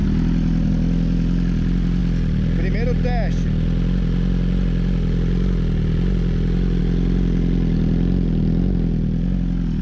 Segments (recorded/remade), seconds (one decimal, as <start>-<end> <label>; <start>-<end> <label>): 0.0-9.8 recorded